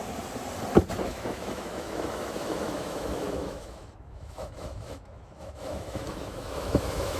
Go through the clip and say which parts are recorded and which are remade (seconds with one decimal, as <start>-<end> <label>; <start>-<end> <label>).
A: 0.0-1.0 recorded; 1.0-7.2 remade